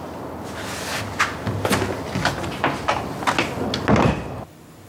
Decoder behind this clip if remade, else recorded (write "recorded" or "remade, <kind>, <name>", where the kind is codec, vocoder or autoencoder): recorded